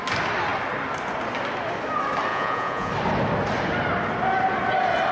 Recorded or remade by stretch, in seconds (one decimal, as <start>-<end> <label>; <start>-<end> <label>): 0.0-2.3 recorded; 2.3-2.9 remade; 2.9-5.1 recorded